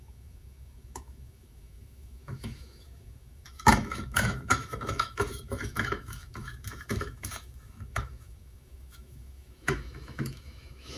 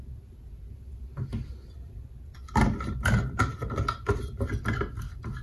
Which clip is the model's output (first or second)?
first